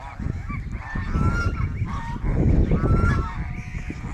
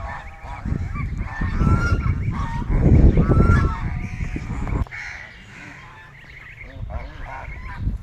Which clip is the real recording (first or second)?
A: first